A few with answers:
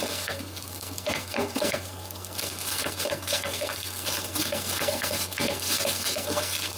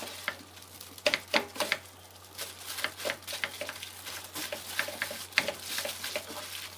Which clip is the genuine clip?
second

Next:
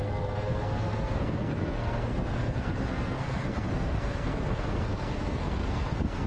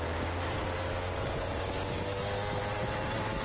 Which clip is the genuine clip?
second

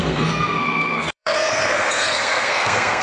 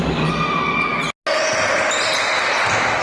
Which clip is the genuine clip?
second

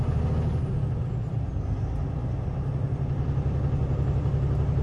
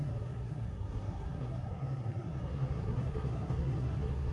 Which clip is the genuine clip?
first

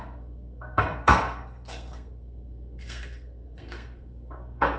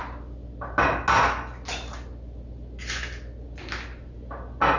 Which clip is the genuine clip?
second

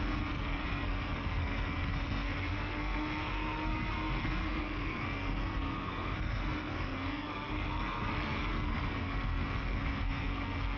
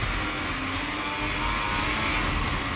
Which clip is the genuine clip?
second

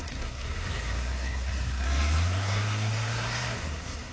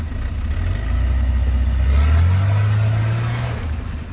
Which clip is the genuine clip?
second